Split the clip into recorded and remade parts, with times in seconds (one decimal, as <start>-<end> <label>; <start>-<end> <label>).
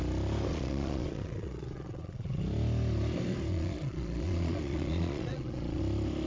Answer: 0.0-0.5 recorded; 0.5-2.4 remade; 2.4-3.5 recorded; 3.5-5.8 remade; 5.8-6.3 recorded